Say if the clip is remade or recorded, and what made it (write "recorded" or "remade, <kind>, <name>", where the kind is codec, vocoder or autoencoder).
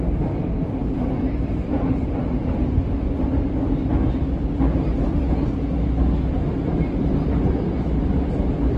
recorded